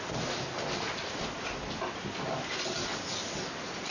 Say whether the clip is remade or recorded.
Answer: recorded